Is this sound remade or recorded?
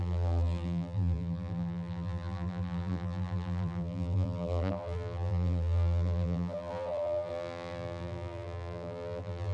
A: remade